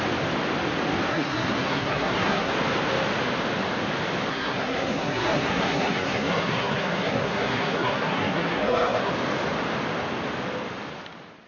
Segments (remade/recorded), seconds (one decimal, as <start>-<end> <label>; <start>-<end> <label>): 0.0-1.1 recorded; 1.1-2.5 remade; 2.5-4.3 recorded; 4.3-9.1 remade; 9.1-11.5 recorded